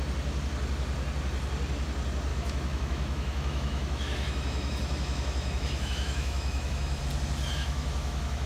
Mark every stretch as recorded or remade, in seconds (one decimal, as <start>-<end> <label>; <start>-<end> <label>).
0.0-2.3 recorded; 2.3-7.0 remade; 7.0-7.5 recorded; 7.5-8.5 remade